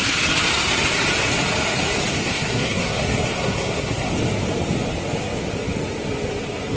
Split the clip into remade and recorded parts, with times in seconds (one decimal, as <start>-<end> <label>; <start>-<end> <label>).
0.0-2.2 recorded; 2.2-4.1 remade; 4.1-6.8 recorded